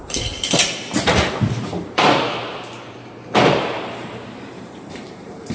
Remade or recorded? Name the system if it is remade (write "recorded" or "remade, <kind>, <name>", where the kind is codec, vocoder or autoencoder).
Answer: remade, vocoder, BigVGAN v2